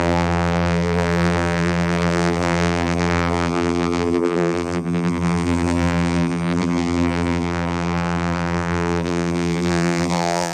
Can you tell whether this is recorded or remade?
remade